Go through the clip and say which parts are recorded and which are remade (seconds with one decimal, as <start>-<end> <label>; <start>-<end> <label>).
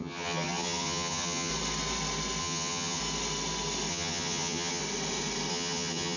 0.0-1.5 remade; 1.5-2.4 recorded; 2.4-3.0 remade; 3.0-3.9 recorded; 3.9-4.8 remade; 4.8-5.5 recorded; 5.5-6.2 remade